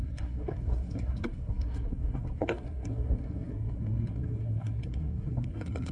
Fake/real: fake